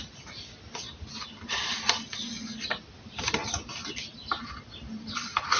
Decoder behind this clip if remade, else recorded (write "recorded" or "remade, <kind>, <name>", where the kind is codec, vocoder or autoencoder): recorded